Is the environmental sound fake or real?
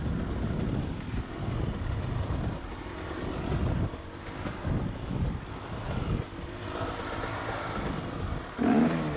real